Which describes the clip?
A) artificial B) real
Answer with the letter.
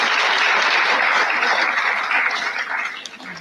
B